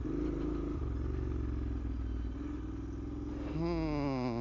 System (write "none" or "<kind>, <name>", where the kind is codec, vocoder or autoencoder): none